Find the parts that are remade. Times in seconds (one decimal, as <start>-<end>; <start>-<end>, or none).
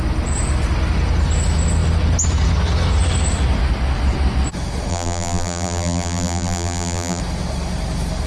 4.9-7.2